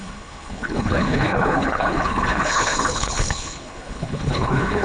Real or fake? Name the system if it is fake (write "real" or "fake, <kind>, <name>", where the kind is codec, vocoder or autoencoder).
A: fake, codec, HILCodec